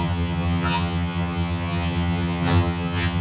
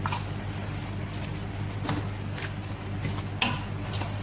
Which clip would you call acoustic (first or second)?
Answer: second